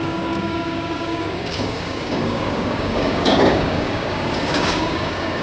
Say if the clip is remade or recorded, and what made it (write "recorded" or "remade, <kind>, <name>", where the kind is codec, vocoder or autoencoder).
remade, codec, DAC